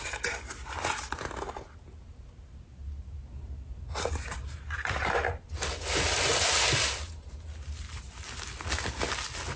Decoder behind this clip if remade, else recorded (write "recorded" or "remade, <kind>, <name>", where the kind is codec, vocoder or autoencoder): recorded